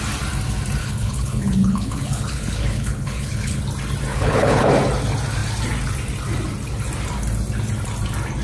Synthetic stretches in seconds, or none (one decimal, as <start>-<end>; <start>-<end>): 0.8-3.6; 4.1-4.7